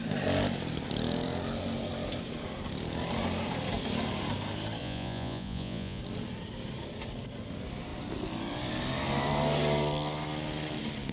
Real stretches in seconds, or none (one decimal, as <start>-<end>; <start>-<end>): 0.0-4.8; 6.0-11.1